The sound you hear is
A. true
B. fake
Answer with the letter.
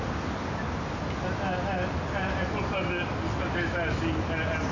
A